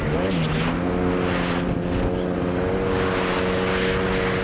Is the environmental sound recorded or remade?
recorded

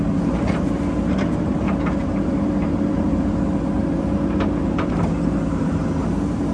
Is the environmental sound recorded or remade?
remade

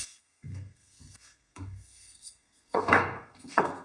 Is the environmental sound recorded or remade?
remade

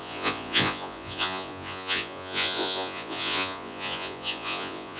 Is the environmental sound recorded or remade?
remade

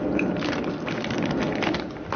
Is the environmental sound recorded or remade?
recorded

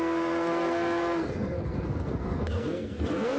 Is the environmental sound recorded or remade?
remade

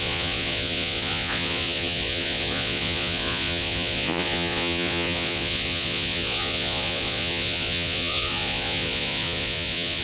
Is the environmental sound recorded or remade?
remade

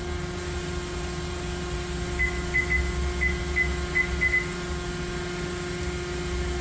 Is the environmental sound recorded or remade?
recorded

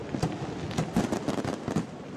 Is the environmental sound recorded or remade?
recorded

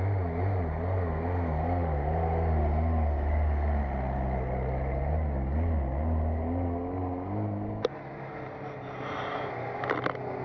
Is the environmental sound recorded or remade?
recorded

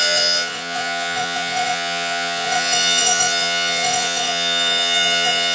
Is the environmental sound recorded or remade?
remade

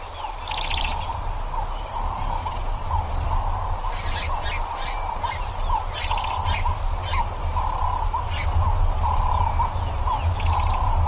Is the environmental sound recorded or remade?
recorded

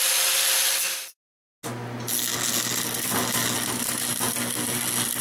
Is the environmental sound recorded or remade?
recorded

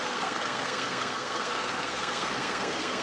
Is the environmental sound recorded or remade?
remade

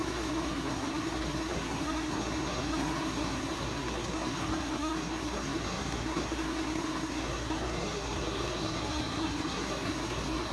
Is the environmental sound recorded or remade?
remade